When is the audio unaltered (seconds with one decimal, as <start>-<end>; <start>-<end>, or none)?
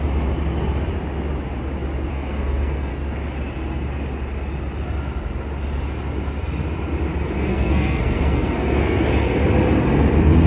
0.0-2.1; 2.9-7.5; 9.0-10.5